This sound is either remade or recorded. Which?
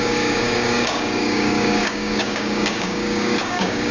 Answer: remade